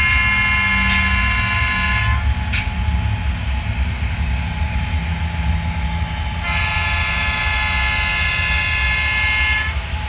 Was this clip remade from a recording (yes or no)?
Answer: no